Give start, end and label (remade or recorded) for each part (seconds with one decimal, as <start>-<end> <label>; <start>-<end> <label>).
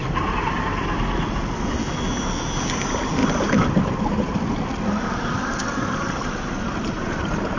0.0-3.2 recorded; 3.2-4.7 remade; 4.7-5.5 recorded; 5.5-7.6 remade